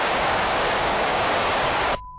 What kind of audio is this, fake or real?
fake